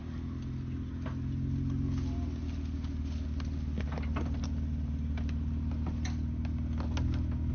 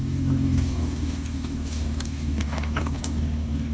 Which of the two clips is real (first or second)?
first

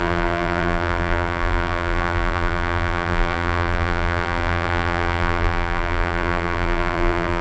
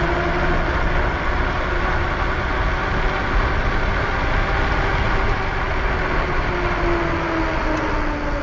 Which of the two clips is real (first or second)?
second